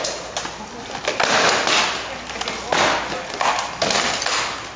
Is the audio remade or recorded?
recorded